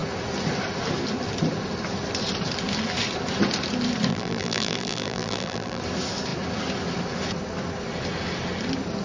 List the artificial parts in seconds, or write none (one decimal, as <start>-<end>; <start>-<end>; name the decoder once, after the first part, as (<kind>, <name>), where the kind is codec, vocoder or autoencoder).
4.1-5.8 (vocoder, BigVGAN v2)